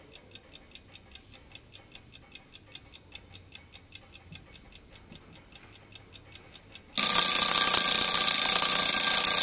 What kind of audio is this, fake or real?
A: real